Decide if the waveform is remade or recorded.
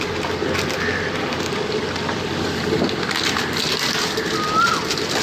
recorded